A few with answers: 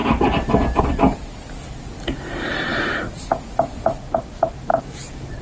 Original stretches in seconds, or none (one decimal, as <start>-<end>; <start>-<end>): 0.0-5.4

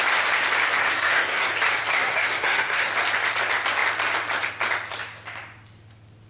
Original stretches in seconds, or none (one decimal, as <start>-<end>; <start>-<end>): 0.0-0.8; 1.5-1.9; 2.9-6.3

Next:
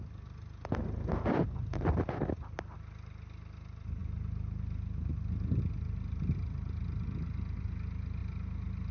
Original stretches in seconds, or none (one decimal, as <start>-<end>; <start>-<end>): 0.0-8.2

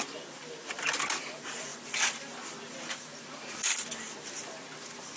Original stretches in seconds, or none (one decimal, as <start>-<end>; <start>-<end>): none

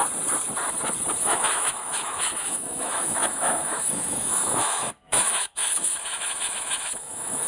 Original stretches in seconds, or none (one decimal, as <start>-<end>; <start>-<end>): 0.0-1.2

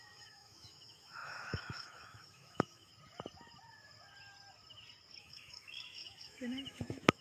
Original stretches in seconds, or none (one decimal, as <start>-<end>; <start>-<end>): 2.9-5.2

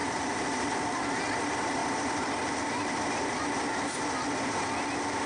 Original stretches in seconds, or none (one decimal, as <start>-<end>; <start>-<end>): 1.8-5.3

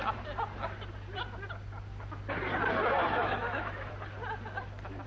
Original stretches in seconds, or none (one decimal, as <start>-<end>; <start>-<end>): 0.0-3.0; 3.9-5.1